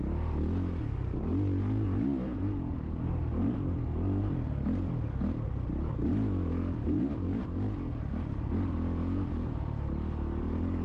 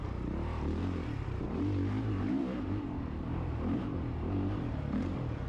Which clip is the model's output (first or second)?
second